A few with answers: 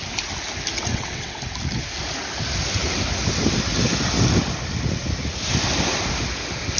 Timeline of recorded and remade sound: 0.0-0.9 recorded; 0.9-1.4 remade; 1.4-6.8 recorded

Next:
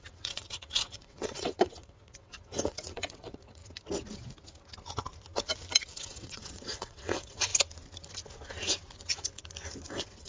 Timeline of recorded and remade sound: 0.0-3.6 remade; 3.6-5.8 recorded; 5.8-7.5 remade; 7.5-9.9 recorded; 9.9-10.3 remade

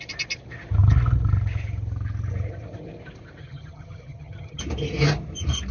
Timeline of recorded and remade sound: 0.0-3.4 recorded; 3.4-4.6 remade; 4.6-5.7 recorded